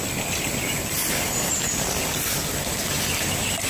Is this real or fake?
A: real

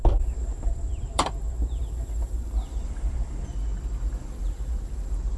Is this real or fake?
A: fake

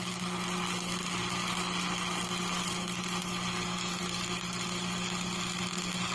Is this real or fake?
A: real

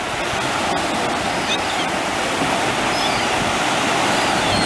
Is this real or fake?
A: real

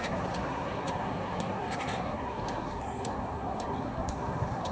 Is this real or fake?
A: fake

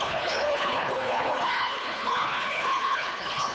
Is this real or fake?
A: fake